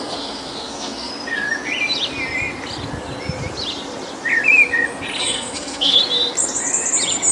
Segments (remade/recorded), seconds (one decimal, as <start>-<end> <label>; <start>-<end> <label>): 0.0-1.1 remade; 1.1-5.2 recorded; 5.2-6.0 remade; 6.0-7.3 recorded